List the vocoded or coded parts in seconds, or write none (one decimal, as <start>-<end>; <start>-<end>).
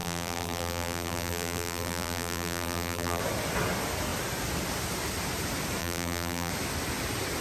0.0-3.2; 5.8-6.5